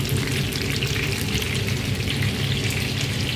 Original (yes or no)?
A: yes